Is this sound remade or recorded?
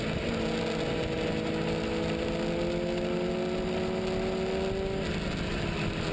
recorded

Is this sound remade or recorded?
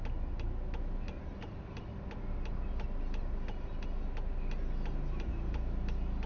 recorded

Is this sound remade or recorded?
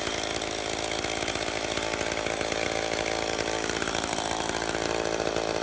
remade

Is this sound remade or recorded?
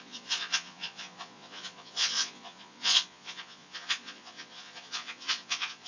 remade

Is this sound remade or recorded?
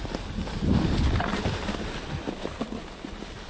recorded